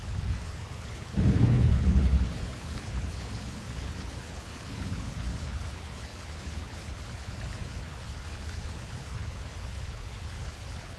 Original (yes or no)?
no